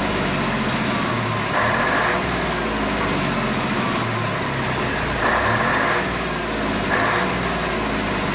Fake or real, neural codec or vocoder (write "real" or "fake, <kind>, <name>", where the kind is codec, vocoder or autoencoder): real